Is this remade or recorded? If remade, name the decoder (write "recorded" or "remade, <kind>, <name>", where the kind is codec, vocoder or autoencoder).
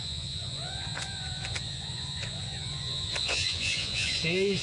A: remade, vocoder, Vocos